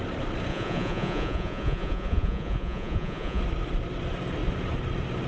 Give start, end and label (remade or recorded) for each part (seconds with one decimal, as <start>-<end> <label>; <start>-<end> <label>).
0.0-0.5 recorded; 0.5-3.4 remade; 3.4-5.3 recorded